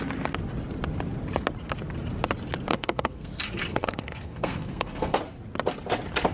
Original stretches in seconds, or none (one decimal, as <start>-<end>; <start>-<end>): 0.0-2.7; 3.3-3.7; 5.2-6.3